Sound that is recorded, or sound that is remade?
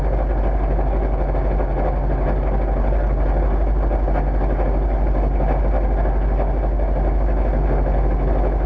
recorded